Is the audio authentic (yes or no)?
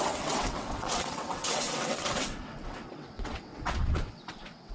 no